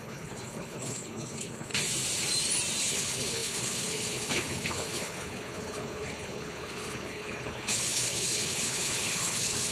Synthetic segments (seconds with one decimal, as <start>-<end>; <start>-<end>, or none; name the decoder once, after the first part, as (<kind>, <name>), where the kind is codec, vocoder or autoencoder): 0.0-1.7 (codec, HILCodec); 2.8-9.7